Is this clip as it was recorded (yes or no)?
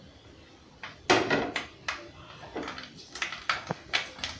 yes